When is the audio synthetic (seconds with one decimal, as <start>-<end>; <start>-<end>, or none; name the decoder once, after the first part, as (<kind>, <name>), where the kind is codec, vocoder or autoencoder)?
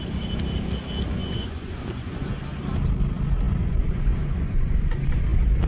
1.2-2.4 (vocoder, Vocos); 3.6-5.2